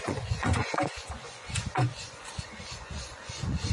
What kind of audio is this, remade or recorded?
remade